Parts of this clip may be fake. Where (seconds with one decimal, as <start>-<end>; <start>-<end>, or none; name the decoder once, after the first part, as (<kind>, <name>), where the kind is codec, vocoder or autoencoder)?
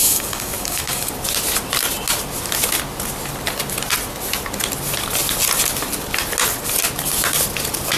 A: 0.0-1.1 (codec, DAC)